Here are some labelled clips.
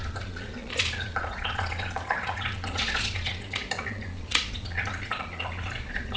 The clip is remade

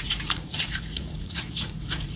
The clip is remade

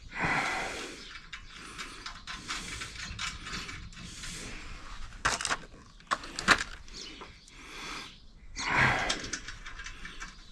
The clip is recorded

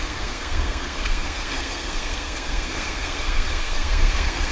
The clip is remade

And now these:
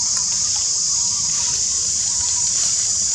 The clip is remade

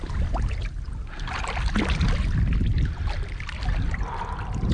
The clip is recorded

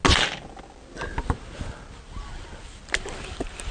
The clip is recorded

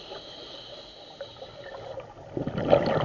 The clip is recorded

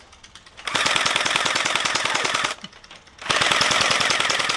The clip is recorded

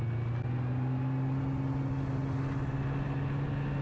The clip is recorded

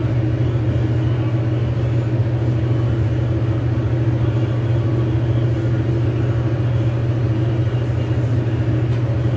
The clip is recorded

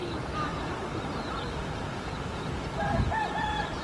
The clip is remade